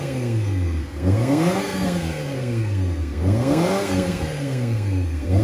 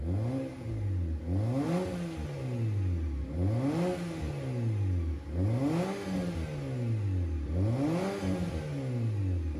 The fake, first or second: first